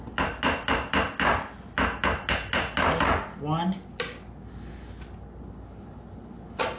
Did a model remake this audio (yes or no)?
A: no